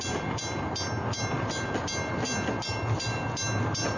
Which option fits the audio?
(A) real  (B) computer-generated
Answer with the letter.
A